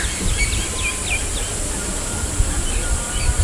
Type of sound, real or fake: real